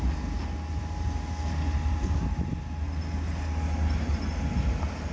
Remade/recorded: recorded